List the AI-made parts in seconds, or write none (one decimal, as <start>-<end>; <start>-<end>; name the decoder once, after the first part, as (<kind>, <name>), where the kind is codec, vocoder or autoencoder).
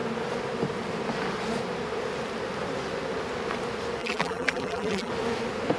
4.0-5.1 (vocoder, BigVGAN v2)